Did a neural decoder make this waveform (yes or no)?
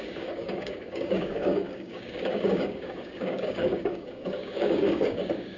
yes